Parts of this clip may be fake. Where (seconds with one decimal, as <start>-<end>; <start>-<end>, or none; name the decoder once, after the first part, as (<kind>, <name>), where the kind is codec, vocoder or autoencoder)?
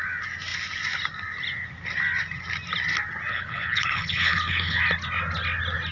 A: 3.3-4.8 (codec, HILCodec)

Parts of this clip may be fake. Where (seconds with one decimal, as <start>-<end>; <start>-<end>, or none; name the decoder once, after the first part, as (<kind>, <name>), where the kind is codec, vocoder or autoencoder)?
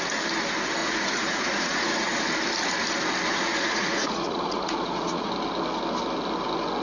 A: 0.8-2.2 (vocoder, Vocos); 3.3-5.3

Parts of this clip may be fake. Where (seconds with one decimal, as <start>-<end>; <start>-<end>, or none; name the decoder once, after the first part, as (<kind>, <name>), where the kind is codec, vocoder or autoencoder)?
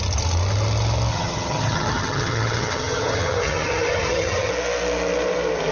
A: 1.1-4.5 (vocoder, HiFi-GAN)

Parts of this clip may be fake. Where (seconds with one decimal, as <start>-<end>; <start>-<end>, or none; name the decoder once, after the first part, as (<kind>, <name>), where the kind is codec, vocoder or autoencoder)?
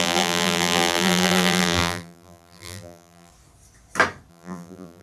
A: 0.0-3.3 (vocoder, BigVGAN v2); 4.3-5.0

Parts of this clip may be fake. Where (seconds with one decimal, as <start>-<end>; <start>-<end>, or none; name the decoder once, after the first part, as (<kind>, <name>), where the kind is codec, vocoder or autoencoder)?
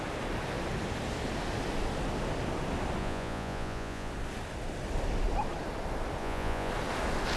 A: 3.0-4.1 (vocoder, Vocos); 6.2-6.7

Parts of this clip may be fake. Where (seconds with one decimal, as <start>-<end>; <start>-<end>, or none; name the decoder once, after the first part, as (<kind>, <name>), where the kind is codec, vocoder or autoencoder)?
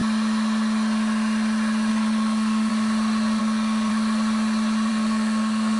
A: 1.9-2.7 (codec, SNAC); 3.4-3.9; 4.9-5.8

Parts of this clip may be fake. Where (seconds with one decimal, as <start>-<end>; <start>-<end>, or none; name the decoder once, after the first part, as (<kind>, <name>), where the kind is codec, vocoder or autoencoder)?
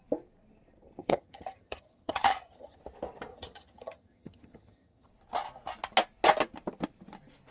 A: 1.0-2.8 (vocoder, HiFi-GAN); 3.3-5.1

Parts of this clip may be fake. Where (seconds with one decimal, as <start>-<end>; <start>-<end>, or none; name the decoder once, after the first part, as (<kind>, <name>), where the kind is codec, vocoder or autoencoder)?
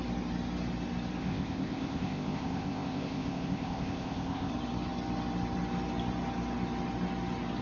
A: 1.2-4.5 (codec, ZipCodec)